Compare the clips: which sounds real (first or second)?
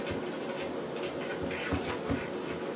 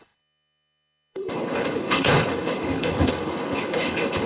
first